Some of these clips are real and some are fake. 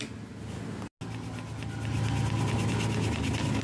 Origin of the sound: real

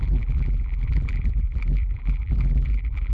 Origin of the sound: fake